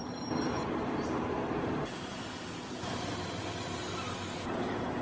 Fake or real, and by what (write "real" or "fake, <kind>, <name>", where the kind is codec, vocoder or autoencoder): real